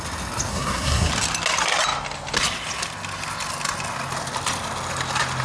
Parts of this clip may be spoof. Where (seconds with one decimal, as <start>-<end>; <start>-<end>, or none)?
0.5-1.1